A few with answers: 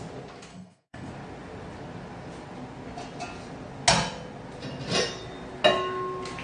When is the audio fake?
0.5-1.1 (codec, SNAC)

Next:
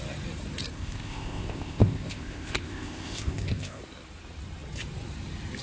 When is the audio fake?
0.7-3.8 (codec, ZipCodec)

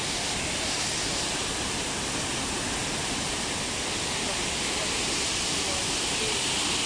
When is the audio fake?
none

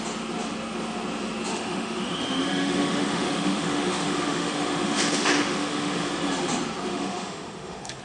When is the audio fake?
1.5-6.1 (autoencoder, DAC-VAE); 6.9-8.0

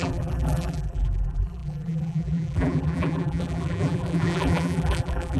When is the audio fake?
0.0-5.4 (vocoder, BigVGAN v2)

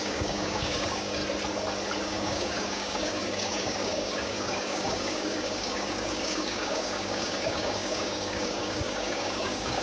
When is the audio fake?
0.0-1.2 (codec, DAC); 2.0-9.8

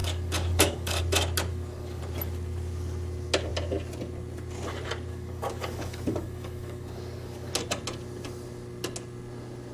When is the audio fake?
0.0-1.0 (codec, DAC); 1.5-2.0; 5.1-7.5

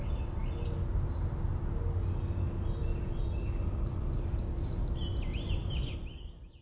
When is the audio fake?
5.3-6.6 (vocoder, BigVGAN v2)